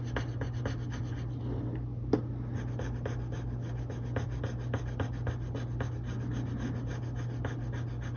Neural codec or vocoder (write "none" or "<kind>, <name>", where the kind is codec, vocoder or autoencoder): none